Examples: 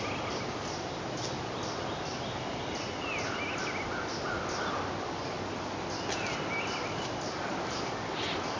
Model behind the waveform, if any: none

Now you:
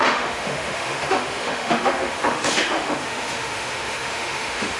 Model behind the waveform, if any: autoencoder, DAC-VAE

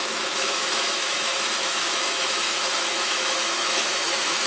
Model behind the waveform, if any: autoencoder, DAC-VAE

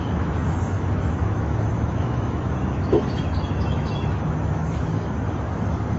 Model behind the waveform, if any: autoencoder, DAC-VAE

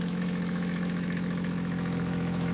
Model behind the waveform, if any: autoencoder, DAC-VAE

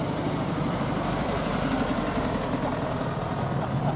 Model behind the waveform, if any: none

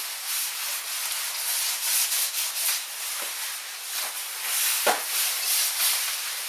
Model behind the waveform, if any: none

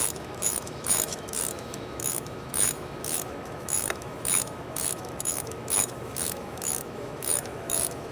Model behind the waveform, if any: autoencoder, DAC-VAE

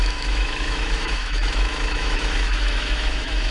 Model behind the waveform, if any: autoencoder, DAC-VAE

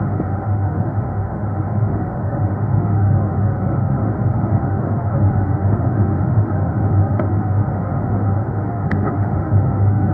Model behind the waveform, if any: autoencoder, DAC-VAE